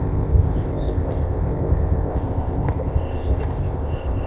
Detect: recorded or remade remade